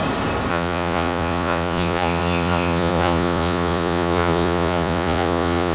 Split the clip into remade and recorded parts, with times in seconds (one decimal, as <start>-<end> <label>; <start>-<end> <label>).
0.0-0.5 recorded; 0.5-5.7 remade